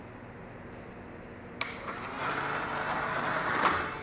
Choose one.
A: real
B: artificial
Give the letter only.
A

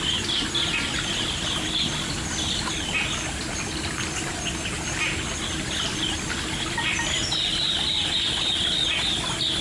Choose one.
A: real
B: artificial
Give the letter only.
A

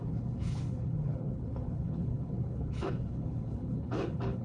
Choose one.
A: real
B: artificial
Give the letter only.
B